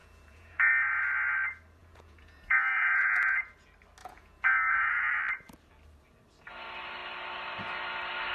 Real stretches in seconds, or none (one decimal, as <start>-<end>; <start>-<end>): 0.7-1.8; 3.5-4.0; 5.1-8.3